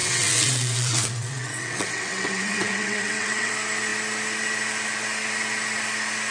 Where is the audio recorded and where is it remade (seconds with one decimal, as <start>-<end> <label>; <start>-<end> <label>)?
0.0-3.5 remade; 3.5-6.3 recorded